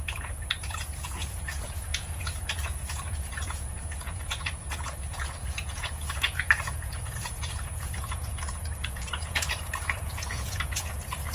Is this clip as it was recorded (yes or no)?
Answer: no